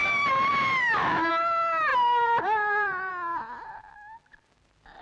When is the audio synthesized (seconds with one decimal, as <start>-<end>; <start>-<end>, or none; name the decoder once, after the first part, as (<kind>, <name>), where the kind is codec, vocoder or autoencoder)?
0.0-1.3 (vocoder, BigVGAN v2); 1.9-3.1